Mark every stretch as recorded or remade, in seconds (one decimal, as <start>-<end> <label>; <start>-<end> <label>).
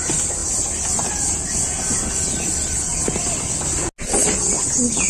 0.0-5.1 recorded